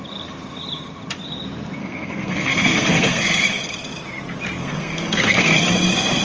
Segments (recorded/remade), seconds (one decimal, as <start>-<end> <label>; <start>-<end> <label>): 0.0-1.8 recorded; 1.8-3.2 remade; 3.2-4.6 recorded; 4.6-5.6 remade; 5.6-6.2 recorded